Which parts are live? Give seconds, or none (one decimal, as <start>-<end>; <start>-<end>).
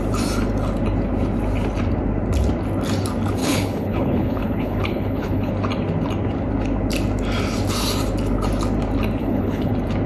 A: 0.0-3.4; 5.5-9.2; 9.7-10.1